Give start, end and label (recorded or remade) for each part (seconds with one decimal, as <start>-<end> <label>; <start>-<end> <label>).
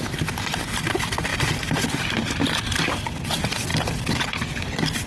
0.0-5.1 recorded